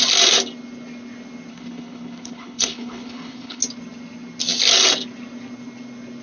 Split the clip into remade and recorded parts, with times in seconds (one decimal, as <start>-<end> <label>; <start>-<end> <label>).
0.0-1.5 recorded; 1.5-3.6 remade; 3.6-6.2 recorded